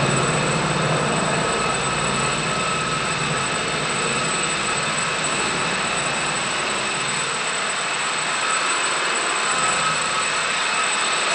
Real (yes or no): yes